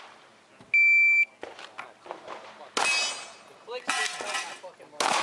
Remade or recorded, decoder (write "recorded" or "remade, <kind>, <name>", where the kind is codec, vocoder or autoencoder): recorded